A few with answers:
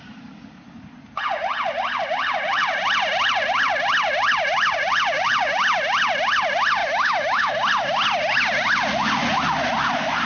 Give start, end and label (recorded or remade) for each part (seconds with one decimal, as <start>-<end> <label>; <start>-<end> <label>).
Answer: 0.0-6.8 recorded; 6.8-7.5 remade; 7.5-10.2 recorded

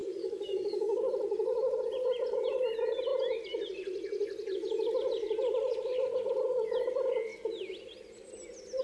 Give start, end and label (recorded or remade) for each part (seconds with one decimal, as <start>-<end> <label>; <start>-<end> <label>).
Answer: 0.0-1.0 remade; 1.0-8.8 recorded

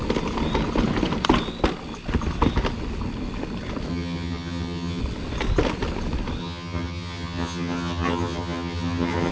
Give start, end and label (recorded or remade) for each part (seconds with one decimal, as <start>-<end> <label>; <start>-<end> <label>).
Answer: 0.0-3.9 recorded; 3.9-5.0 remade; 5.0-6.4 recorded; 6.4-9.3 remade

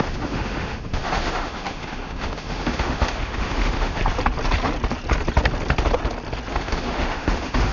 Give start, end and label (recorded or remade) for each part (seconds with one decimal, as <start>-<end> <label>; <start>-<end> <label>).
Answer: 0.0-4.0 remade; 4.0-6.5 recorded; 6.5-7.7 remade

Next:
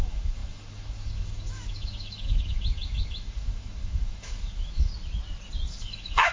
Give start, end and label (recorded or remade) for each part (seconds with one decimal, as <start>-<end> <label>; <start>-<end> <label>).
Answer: 0.0-4.9 remade; 4.9-5.7 recorded; 5.7-6.3 remade